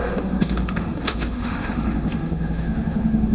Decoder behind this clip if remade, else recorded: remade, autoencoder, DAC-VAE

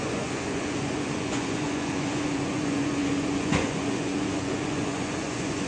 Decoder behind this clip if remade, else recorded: remade, vocoder, Vocos